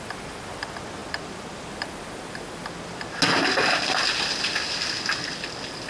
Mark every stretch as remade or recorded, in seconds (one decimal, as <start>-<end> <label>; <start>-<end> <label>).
0.0-5.9 recorded